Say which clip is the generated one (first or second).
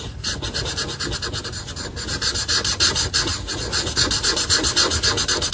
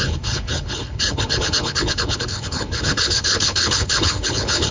second